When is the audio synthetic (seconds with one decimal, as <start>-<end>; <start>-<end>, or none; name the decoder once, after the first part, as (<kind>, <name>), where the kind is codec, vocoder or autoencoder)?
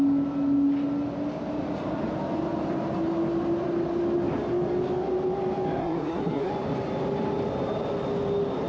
5.8-6.5 (codec, SNAC)